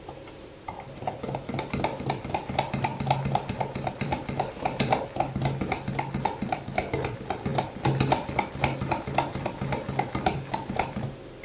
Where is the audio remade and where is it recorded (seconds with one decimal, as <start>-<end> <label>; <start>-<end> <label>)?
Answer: 0.0-2.9 recorded; 2.9-5.3 remade; 5.3-7.5 recorded; 7.5-11.0 remade; 11.0-11.4 recorded